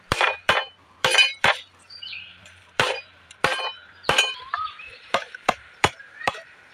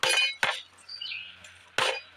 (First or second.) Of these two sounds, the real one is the second